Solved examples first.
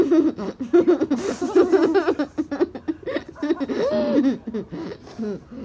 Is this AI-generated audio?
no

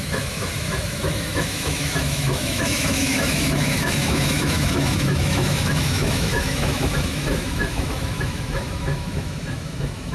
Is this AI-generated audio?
yes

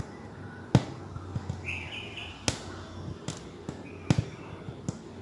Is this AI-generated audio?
no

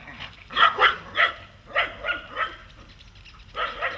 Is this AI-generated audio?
no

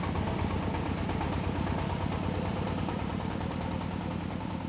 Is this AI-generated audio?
yes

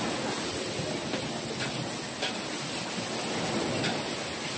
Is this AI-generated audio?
no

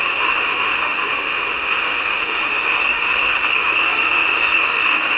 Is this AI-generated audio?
yes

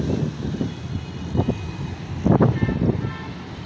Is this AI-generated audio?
no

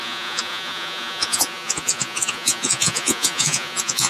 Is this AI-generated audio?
yes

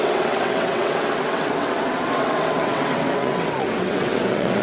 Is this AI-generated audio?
yes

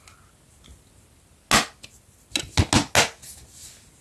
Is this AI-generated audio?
no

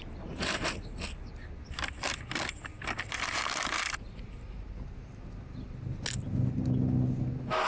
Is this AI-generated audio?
no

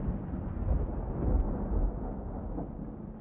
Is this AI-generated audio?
no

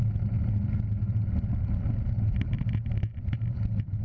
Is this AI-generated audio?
no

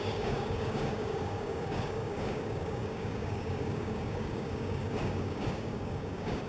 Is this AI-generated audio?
yes